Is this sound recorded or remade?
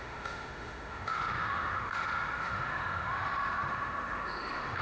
remade